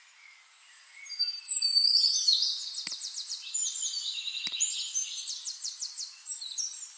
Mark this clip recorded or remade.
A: remade